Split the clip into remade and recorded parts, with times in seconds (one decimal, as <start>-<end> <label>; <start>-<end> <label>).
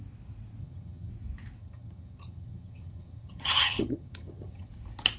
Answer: 0.0-0.6 recorded; 0.6-1.1 remade; 1.1-1.6 recorded; 1.6-4.7 remade; 4.7-5.2 recorded